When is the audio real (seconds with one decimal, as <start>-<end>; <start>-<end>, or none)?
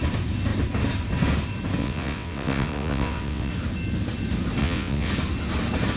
0.0-1.8; 3.5-4.6; 5.1-6.0